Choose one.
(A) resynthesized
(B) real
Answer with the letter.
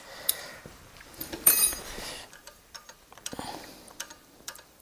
A